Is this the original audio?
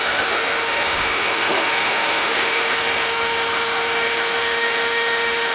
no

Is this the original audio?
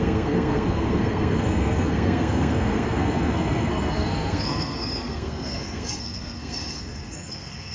no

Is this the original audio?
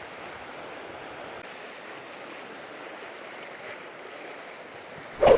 yes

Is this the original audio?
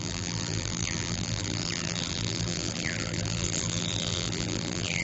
no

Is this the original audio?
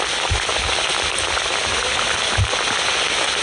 yes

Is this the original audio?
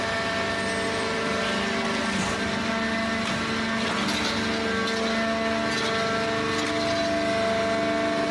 yes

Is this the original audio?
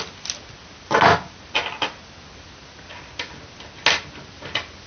yes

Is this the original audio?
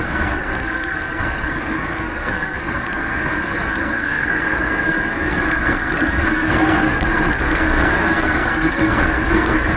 no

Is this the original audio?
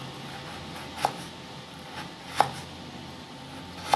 yes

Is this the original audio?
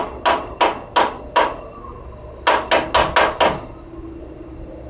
yes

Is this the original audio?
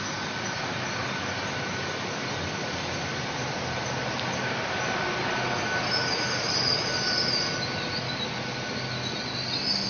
yes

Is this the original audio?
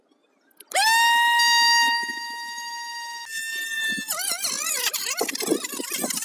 yes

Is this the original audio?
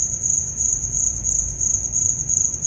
no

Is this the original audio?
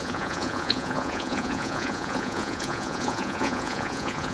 no